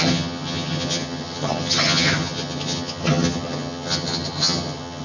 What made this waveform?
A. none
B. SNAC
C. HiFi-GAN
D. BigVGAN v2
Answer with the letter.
C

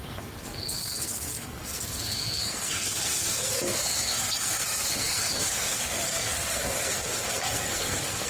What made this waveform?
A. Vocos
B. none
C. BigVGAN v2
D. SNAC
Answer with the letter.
D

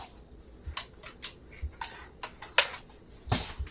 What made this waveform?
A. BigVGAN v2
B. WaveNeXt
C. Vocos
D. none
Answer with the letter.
D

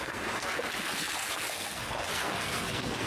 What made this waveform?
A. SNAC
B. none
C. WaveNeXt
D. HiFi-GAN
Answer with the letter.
A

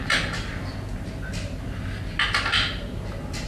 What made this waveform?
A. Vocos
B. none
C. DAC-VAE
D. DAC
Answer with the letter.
B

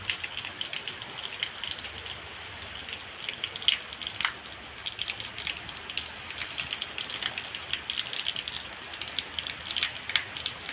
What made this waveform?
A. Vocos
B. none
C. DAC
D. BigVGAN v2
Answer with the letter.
B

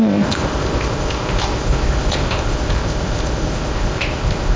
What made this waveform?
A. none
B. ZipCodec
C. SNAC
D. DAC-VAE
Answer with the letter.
B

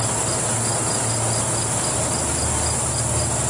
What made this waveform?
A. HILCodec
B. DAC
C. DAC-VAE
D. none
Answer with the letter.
D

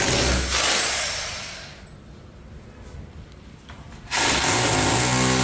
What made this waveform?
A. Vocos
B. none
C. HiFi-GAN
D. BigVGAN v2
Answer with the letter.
B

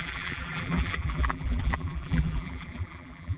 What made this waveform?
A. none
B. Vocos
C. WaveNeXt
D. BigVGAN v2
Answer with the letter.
D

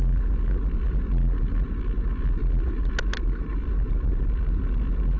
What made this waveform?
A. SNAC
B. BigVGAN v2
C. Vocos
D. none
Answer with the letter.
D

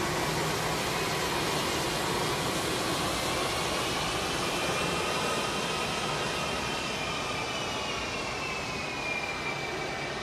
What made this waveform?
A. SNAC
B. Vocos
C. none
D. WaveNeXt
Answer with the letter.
C